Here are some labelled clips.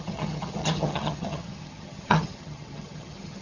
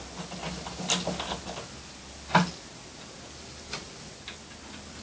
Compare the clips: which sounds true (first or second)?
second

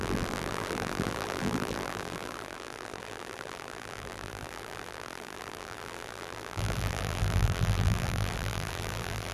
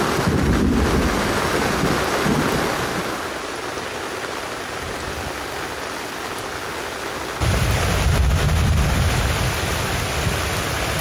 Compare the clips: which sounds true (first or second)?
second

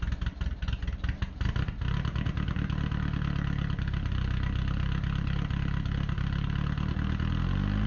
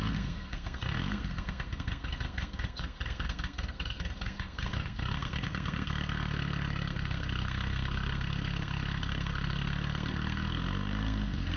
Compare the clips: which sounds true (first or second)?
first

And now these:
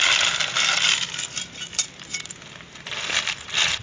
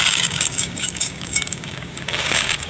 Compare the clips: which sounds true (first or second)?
first